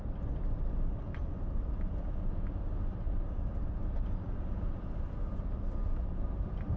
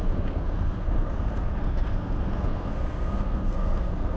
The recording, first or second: first